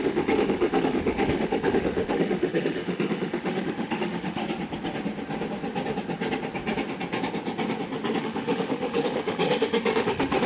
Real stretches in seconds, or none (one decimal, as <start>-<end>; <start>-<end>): 4.4-8.2